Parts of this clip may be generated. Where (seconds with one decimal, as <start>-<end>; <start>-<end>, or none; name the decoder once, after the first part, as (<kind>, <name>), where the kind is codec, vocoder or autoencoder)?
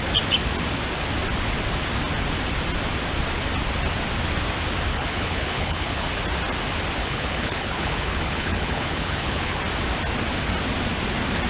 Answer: 4.9-6.1 (codec, HILCodec); 7.0-9.6